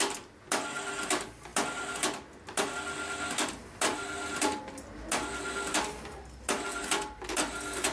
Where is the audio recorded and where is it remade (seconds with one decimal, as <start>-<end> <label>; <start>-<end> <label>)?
0.0-7.9 recorded